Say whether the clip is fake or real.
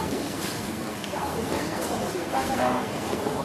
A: fake